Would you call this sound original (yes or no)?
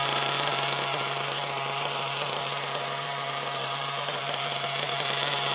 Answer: no